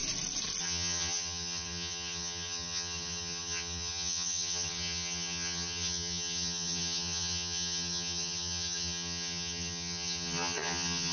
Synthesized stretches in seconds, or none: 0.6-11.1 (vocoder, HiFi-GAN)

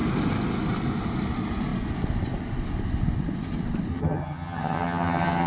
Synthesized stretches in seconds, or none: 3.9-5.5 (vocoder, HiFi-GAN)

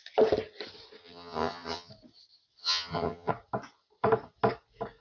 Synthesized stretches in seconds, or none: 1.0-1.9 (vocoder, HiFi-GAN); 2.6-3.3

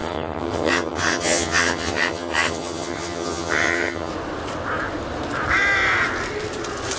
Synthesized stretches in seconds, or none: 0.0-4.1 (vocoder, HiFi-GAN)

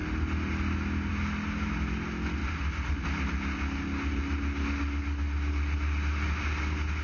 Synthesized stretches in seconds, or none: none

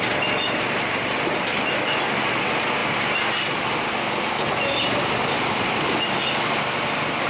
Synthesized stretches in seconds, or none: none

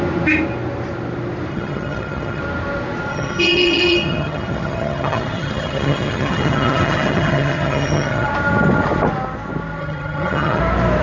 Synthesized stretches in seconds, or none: 1.5-2.4 (vocoder, HiFi-GAN); 3.1-8.3; 9.8-10.6